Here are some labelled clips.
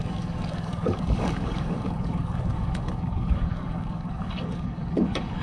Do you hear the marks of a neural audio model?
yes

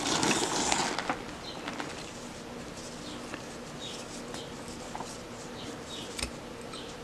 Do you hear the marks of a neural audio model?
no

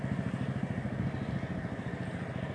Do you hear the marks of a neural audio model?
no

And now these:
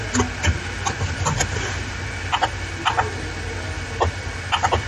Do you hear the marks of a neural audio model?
no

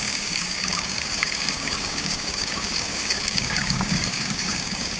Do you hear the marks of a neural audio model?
yes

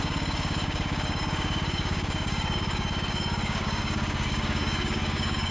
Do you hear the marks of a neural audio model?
yes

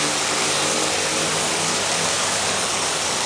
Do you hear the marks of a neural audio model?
yes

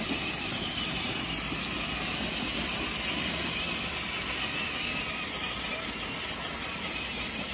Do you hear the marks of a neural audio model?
no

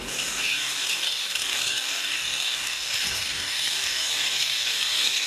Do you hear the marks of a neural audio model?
yes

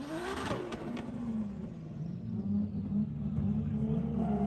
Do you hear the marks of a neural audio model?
no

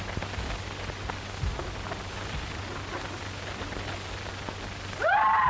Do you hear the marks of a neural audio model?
no